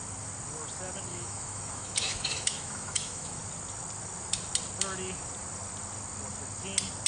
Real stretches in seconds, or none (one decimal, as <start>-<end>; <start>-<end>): 0.0-1.1; 3.4-7.1